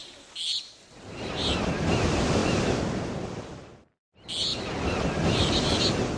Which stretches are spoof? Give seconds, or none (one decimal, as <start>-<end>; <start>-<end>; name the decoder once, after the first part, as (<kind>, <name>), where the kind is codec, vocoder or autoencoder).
none